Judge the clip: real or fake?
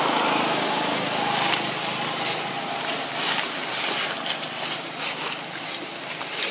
real